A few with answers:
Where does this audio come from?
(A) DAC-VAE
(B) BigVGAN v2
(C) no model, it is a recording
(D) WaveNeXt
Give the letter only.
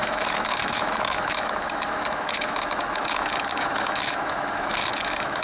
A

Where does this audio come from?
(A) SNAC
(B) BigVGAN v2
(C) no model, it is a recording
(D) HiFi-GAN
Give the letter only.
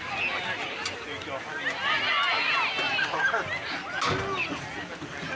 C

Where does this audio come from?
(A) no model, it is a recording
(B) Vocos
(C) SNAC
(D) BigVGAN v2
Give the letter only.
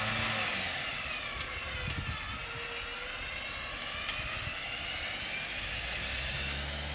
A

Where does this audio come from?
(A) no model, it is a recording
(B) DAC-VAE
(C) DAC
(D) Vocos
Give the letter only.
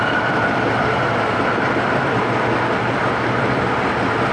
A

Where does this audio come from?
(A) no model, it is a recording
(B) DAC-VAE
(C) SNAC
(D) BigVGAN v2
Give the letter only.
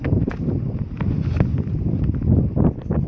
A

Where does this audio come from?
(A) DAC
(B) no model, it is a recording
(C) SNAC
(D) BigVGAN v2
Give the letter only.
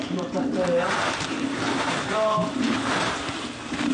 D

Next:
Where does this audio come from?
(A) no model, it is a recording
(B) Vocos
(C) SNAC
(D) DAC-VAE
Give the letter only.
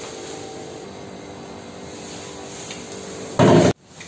A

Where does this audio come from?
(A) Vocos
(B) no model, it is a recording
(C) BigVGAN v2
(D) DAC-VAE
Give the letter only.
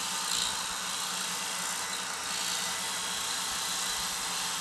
B